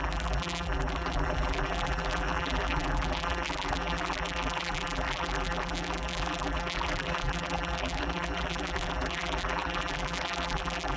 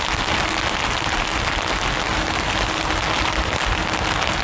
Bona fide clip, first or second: second